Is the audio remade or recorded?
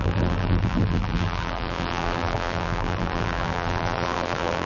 remade